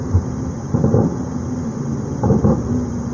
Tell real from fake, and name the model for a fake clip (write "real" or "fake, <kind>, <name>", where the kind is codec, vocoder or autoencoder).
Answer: real